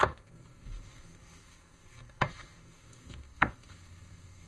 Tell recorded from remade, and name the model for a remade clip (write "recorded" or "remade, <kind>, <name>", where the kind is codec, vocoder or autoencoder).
remade, codec, SNAC